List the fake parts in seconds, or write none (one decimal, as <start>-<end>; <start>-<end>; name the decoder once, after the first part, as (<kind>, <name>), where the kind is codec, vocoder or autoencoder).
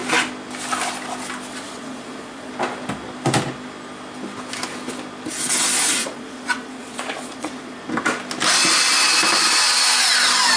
1.5-2.5 (vocoder, Vocos); 6.0-7.8